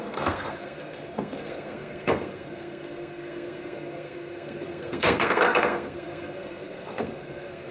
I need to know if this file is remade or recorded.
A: remade